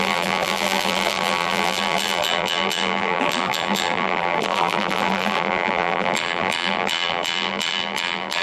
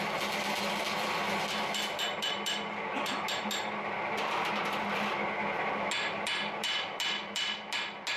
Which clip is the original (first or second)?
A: second